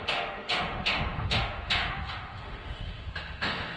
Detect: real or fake fake